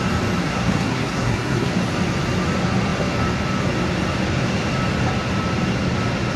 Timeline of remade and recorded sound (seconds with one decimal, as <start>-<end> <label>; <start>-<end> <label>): 0.0-0.4 recorded; 0.4-1.7 remade; 1.7-6.4 recorded